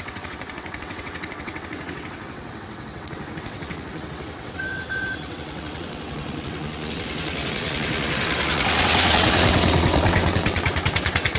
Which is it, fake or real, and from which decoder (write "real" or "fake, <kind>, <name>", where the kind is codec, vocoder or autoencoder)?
fake, vocoder, WaveNeXt